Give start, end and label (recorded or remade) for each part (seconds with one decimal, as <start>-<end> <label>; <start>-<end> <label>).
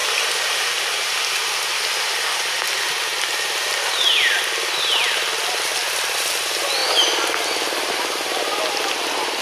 0.0-9.4 recorded